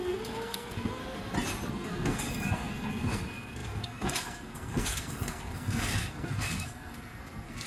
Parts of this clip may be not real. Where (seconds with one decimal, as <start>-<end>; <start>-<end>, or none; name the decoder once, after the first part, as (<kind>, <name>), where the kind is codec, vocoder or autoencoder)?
0.0-1.0 (codec, SNAC); 1.7-7.7